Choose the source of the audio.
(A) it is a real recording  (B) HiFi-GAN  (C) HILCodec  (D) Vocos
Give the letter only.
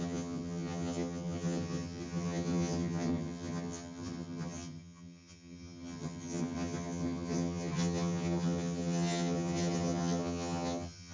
B